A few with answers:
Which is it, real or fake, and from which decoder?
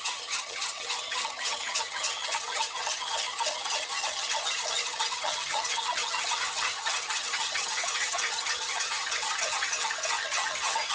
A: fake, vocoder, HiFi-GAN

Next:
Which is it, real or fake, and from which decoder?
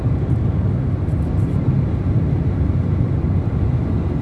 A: real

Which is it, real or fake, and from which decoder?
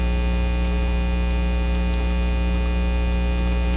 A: real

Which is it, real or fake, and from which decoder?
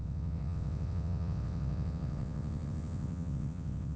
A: fake, vocoder, WaveNeXt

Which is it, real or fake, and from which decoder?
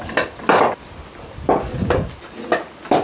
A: real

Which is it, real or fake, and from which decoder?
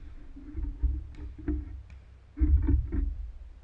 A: fake, vocoder, BigVGAN v2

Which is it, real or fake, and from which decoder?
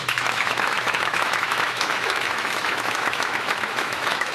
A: fake, autoencoder, DAC-VAE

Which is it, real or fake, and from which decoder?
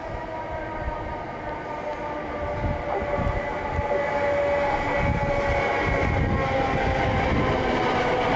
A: real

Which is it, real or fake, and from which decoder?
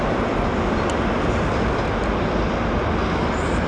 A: real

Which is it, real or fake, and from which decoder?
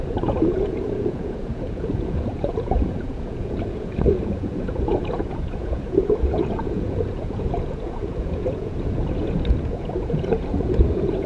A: fake, vocoder, Vocos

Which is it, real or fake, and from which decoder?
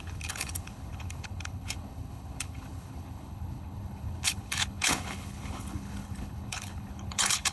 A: fake, codec, HILCodec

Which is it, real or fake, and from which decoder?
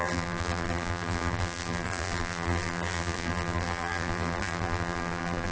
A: fake, vocoder, BigVGAN v2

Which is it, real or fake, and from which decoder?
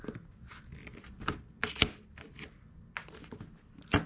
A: real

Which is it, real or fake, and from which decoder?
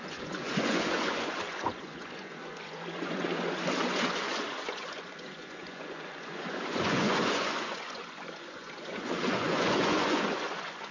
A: fake, vocoder, Vocos